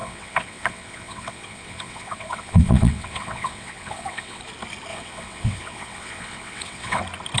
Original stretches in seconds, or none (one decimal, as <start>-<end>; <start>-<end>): 4.4-4.9; 7.0-7.4